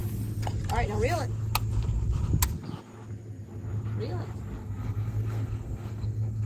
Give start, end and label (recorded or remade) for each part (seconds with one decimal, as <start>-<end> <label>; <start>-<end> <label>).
0.0-4.6 recorded; 4.6-6.5 remade